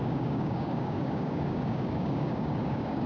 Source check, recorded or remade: remade